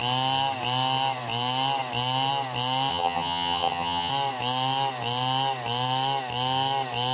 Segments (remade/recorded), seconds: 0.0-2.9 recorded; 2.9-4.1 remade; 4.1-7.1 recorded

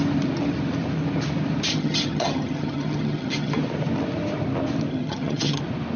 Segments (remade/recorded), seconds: 0.0-1.7 recorded; 1.7-3.6 remade; 3.6-4.9 recorded; 4.9-5.6 remade; 5.6-6.0 recorded

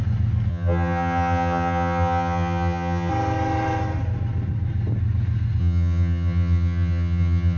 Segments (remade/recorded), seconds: 0.0-0.5 recorded; 0.5-3.1 remade; 3.1-5.6 recorded; 5.6-7.6 remade

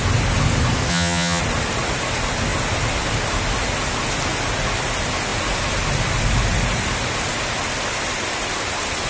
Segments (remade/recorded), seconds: 0.0-0.9 recorded; 0.9-1.4 remade; 1.4-9.1 recorded